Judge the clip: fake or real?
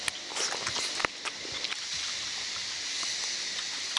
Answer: real